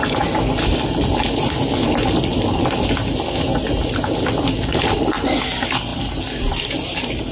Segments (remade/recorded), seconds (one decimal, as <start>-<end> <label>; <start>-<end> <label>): 0.0-7.3 recorded